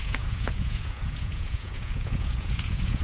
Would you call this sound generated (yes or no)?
yes